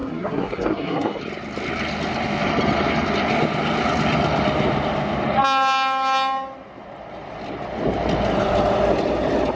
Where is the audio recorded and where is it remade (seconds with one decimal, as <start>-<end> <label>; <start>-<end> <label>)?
0.0-1.2 remade; 1.2-9.6 recorded